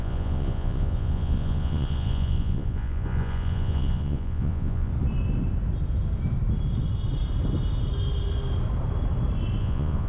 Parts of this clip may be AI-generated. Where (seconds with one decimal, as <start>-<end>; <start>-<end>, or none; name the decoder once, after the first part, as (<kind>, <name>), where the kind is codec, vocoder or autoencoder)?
0.0-4.9 (vocoder, Vocos); 9.6-10.1